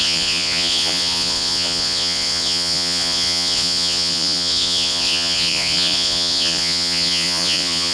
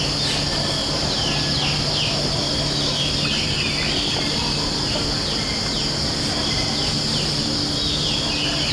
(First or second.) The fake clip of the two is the first